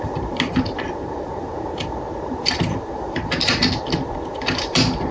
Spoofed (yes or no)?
yes